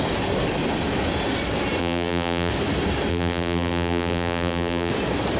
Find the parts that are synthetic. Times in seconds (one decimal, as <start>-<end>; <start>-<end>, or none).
1.8-2.5; 3.1-4.9